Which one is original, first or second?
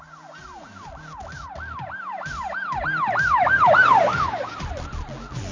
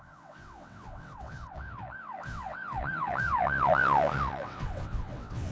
first